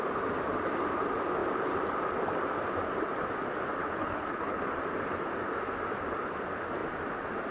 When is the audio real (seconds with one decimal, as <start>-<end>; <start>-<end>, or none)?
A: 0.0-3.8; 4.6-7.5